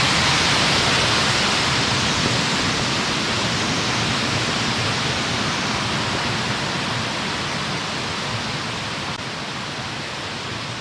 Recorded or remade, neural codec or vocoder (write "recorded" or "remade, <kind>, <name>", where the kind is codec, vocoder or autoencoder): recorded